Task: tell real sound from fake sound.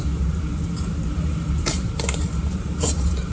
fake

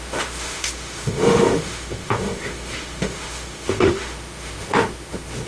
fake